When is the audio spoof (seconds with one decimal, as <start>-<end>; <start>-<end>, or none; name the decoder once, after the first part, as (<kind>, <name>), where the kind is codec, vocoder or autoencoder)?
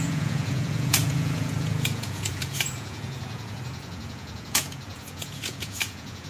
0.0-6.3 (vocoder, Vocos)